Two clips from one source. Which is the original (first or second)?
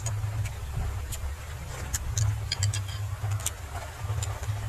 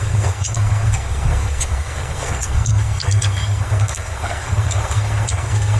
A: first